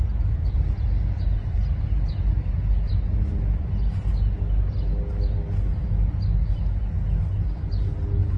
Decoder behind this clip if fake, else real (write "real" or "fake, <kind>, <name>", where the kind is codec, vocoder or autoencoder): real